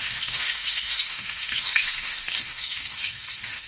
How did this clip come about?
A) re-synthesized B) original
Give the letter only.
A